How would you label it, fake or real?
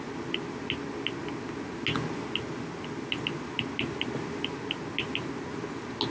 real